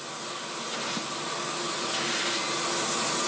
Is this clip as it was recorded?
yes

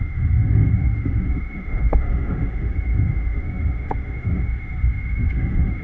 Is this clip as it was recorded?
no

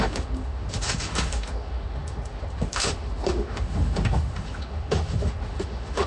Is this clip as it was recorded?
no